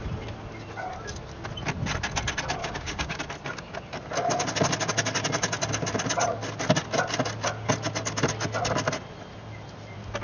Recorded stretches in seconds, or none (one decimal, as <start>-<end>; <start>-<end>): 0.0-2.6; 3.2-10.2